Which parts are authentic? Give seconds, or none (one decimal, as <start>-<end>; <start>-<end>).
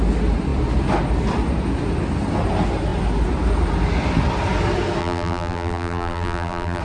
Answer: 0.0-5.0